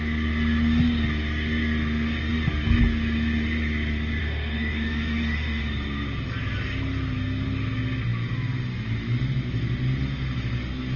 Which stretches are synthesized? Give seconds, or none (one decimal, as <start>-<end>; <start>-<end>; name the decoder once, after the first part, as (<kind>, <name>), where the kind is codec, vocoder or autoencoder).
4.2-5.6 (autoencoder, DAC-VAE)